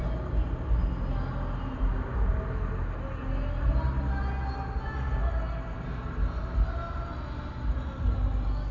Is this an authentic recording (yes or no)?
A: yes